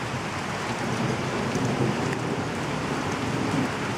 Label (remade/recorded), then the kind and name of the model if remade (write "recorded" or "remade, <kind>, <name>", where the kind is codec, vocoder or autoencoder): remade, vocoder, BigVGAN v2